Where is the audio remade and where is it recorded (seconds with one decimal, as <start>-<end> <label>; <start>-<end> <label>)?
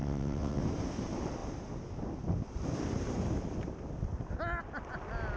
0.0-0.6 remade; 0.6-5.4 recorded